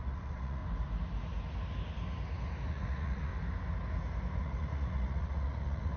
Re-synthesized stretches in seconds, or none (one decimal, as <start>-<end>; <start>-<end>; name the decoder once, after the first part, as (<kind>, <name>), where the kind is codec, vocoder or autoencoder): 0.0-0.6 (vocoder, Vocos); 2.7-3.3; 4.4-6.0

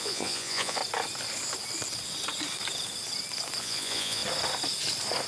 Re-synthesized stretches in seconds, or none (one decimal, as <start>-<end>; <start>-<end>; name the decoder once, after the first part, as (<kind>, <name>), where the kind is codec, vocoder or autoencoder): 0.0-0.8 (vocoder, Vocos); 3.6-4.2